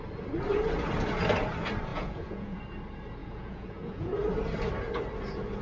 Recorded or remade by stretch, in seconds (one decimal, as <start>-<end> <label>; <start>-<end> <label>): 0.0-1.9 recorded; 1.9-2.6 remade; 2.6-3.2 recorded; 3.2-4.1 remade; 4.1-5.6 recorded